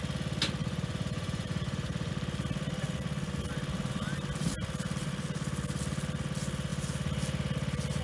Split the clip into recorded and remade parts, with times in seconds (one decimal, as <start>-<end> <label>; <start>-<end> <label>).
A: 0.0-0.6 recorded; 0.6-2.1 remade; 2.1-8.0 recorded